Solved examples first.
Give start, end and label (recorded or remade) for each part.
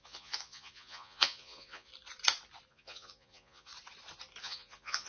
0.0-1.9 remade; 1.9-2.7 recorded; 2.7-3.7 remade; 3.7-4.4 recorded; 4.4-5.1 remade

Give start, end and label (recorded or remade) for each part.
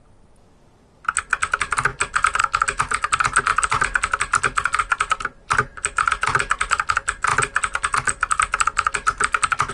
0.0-9.7 recorded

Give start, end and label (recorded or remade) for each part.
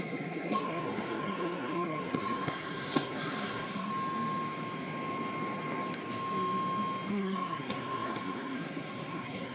0.0-3.9 remade; 3.9-7.1 recorded; 7.1-9.5 remade